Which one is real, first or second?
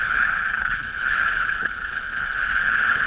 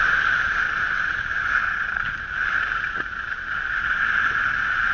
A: second